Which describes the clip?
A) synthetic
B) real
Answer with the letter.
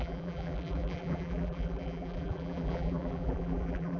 A